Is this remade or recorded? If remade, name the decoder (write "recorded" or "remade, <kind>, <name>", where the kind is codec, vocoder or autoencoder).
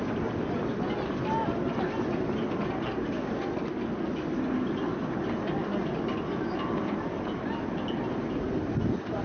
recorded